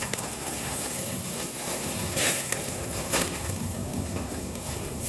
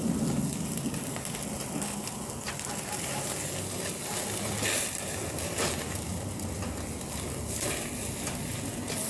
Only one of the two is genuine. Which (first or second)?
second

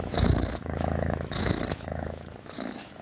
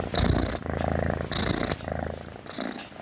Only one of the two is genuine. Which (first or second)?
second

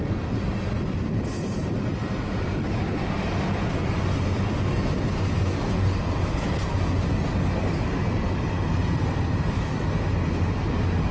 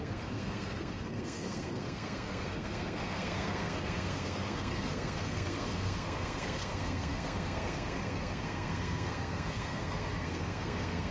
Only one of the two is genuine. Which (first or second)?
first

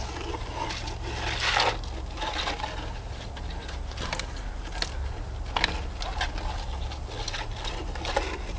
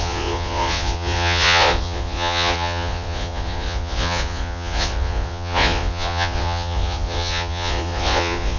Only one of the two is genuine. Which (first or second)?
first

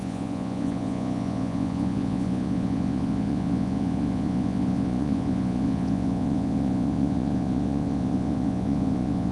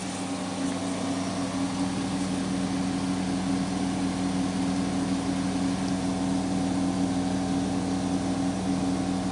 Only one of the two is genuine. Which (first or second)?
second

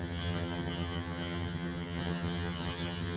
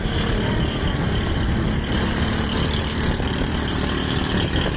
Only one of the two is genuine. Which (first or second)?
second